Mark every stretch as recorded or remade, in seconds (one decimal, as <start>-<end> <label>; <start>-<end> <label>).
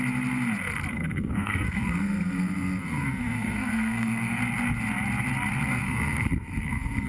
0.0-0.9 recorded; 0.9-4.4 remade; 4.4-5.8 recorded; 5.8-7.1 remade